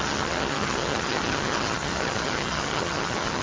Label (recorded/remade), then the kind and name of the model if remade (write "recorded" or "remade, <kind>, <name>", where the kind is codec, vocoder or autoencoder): remade, vocoder, HiFi-GAN